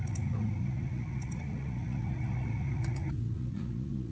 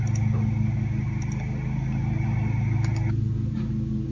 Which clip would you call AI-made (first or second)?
first